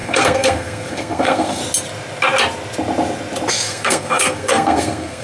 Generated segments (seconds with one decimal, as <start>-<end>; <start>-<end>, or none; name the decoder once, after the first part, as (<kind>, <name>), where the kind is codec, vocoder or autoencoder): 0.0-1.6 (codec, SNAC); 3.5-5.2